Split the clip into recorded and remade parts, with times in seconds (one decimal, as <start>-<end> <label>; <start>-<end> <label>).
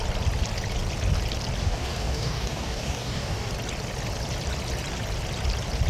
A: 0.0-1.6 recorded; 1.6-3.5 remade; 3.5-5.9 recorded